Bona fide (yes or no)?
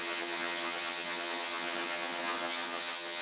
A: no